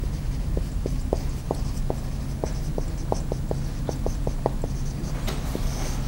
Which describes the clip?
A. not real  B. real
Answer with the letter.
B